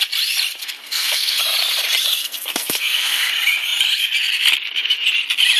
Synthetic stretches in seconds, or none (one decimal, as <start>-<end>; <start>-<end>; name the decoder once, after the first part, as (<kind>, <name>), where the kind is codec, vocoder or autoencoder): 0.6-1.4 (codec, SNAC); 2.2-3.3